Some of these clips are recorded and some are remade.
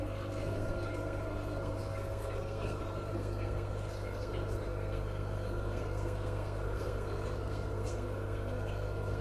remade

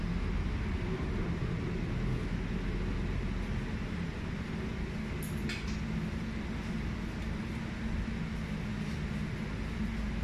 recorded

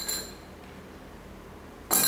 recorded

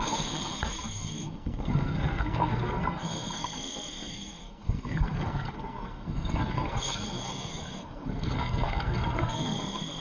remade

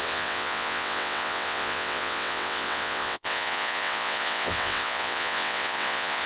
remade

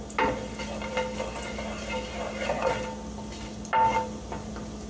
recorded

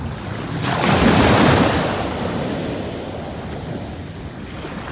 recorded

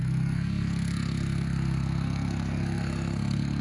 remade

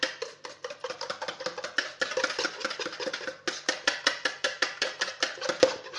recorded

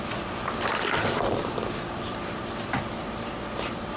remade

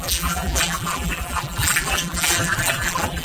remade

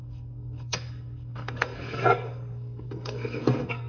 remade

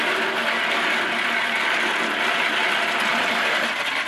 recorded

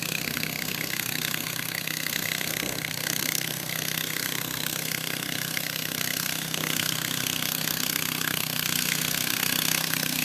remade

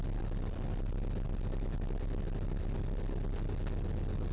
recorded